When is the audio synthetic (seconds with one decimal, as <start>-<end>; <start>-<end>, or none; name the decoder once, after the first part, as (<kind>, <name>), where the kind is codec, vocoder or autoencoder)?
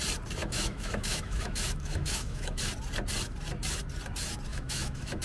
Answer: 0.4-2.6 (autoencoder, DAC-VAE); 4.5-5.2